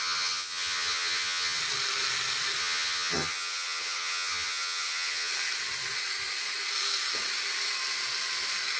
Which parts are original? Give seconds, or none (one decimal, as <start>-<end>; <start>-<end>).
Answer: 1.6-2.6; 5.3-8.8